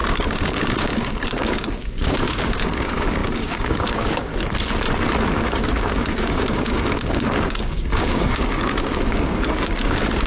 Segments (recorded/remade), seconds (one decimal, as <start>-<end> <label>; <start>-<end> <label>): 0.0-4.3 remade; 4.3-5.4 recorded; 5.4-10.3 remade